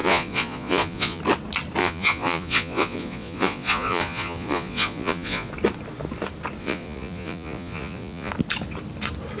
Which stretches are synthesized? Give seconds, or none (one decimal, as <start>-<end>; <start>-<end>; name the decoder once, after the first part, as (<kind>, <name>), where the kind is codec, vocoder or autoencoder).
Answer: 0.0-1.2 (vocoder, Vocos); 1.8-5.5; 6.6-8.3